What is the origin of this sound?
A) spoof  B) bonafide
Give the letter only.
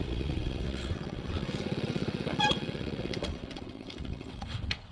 A